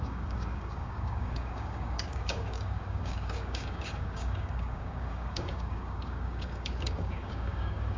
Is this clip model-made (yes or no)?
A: yes